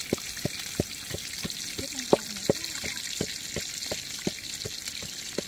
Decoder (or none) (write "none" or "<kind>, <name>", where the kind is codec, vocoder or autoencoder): none